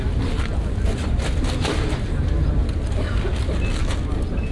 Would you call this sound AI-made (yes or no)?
no